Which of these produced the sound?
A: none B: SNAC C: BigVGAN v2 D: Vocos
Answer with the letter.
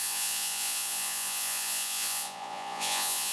D